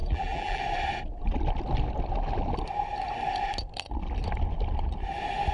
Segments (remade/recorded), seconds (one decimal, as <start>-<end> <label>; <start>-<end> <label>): 0.0-0.6 remade; 0.6-5.5 recorded